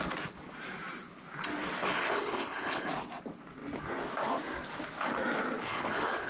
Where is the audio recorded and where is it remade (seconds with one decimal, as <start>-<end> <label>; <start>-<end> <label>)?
0.0-1.8 recorded; 1.8-2.9 remade; 2.9-5.7 recorded; 5.7-6.3 remade